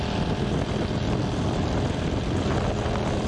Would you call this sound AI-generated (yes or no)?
no